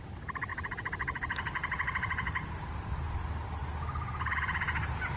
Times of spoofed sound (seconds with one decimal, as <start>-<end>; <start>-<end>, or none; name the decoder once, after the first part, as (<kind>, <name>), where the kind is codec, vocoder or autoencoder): none